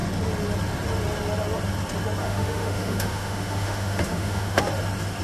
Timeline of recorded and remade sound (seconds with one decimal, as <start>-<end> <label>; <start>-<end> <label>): 0.0-2.2 recorded; 2.2-4.6 remade; 4.6-5.2 recorded